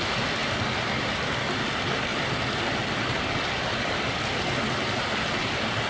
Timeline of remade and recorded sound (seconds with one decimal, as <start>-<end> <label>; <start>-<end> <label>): 0.0-5.9 recorded